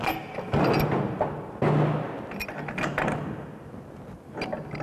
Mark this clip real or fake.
real